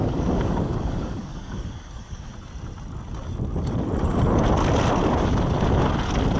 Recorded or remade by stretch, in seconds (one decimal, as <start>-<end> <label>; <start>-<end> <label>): 0.0-2.3 remade; 2.3-6.4 recorded